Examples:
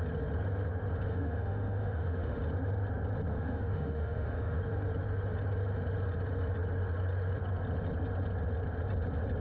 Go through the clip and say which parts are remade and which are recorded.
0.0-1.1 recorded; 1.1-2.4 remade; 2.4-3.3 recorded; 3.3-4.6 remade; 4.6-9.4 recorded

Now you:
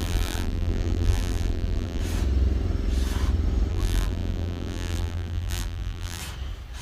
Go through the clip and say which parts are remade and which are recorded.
0.0-2.0 remade; 2.0-3.7 recorded; 3.7-6.2 remade; 6.2-6.8 recorded

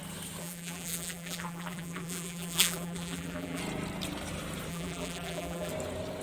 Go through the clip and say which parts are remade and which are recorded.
0.0-0.4 recorded; 0.4-3.6 remade; 3.6-4.7 recorded; 4.7-5.7 remade; 5.7-6.2 recorded

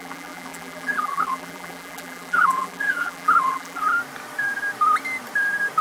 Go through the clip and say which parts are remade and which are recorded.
0.0-3.9 remade; 3.9-5.8 recorded

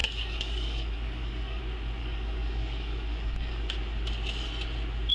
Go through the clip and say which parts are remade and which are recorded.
0.0-1.6 remade; 1.6-2.0 recorded; 2.0-3.7 remade; 3.7-5.1 recorded

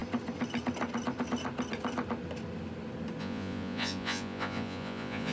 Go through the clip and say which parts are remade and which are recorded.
0.0-3.2 recorded; 3.2-5.3 remade

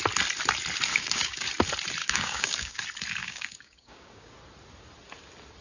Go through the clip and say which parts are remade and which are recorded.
0.0-0.9 recorded; 0.9-1.5 remade; 1.5-2.0 recorded; 2.0-2.8 remade; 2.8-3.2 recorded; 3.2-4.3 remade; 4.3-5.6 recorded

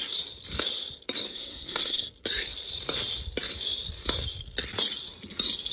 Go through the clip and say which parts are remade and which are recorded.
0.0-1.3 recorded; 1.3-2.1 remade; 2.1-5.7 recorded